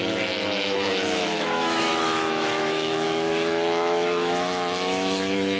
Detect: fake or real fake